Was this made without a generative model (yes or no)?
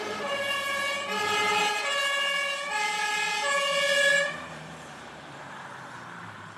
no